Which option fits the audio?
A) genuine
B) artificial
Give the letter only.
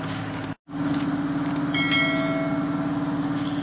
A